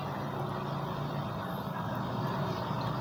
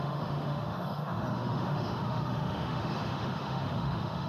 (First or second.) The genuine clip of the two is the first